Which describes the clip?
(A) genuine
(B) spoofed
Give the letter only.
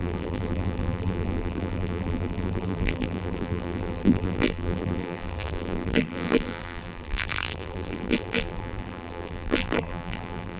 B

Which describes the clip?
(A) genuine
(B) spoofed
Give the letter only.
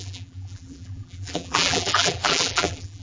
B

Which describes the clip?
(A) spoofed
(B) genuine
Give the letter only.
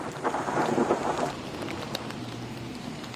A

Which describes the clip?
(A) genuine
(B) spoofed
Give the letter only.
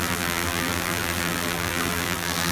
B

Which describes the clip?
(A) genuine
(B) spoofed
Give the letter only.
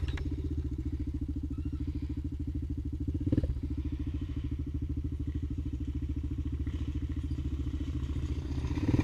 B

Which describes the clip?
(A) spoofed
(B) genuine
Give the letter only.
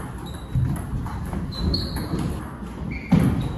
B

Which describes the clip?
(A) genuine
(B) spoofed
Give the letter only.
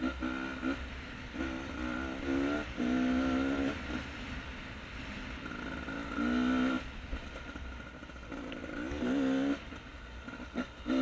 A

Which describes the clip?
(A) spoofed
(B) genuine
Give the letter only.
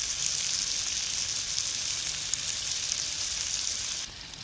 B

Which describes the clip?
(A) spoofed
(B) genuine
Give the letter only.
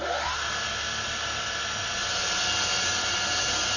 B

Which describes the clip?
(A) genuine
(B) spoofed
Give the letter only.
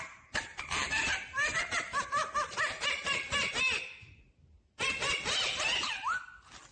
A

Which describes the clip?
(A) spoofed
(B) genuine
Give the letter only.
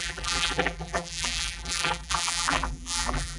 A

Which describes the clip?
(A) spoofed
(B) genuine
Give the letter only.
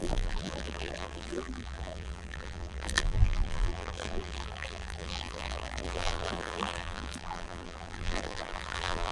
A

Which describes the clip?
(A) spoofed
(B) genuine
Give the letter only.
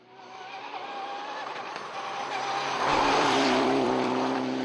A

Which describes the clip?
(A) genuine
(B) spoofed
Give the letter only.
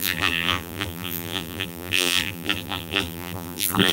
B